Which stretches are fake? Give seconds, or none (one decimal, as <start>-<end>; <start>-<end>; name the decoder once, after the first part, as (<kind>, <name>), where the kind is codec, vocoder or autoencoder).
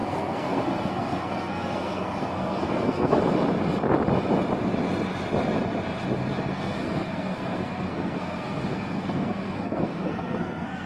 0.0-3.2 (codec, SNAC); 6.5-10.9